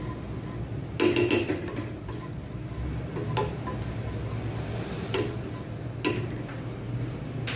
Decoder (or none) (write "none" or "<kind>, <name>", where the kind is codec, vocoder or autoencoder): none